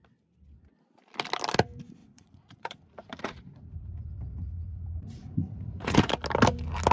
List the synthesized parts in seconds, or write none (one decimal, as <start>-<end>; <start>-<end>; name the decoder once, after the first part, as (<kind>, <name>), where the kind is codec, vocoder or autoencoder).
2.0-6.1 (vocoder, Vocos)